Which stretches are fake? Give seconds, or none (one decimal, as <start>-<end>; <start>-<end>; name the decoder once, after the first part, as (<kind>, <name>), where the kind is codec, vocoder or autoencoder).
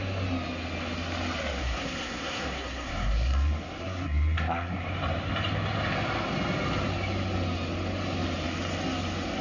1.6-4.8 (codec, SNAC)